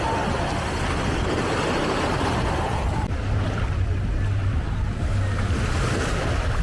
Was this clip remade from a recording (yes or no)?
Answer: no